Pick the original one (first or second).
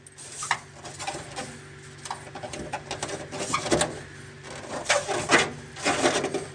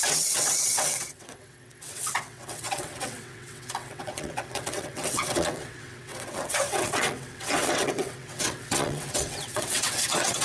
first